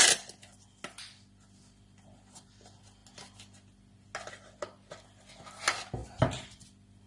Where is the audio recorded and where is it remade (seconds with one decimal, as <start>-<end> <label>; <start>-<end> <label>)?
0.0-7.1 recorded